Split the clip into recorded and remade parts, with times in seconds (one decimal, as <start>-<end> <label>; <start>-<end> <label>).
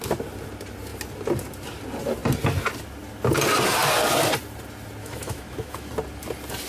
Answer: 0.0-5.0 recorded; 5.0-5.9 remade; 5.9-6.7 recorded